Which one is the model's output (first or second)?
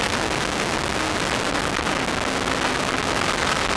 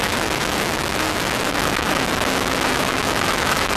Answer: second